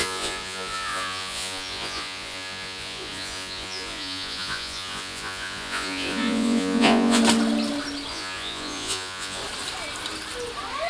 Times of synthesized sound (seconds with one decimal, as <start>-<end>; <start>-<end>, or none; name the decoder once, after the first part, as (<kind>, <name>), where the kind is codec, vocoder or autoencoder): 0.0-7.2 (vocoder, Vocos); 8.1-9.4